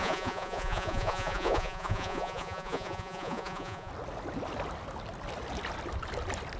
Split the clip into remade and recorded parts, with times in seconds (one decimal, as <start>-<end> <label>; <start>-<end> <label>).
0.0-3.9 remade; 3.9-6.6 recorded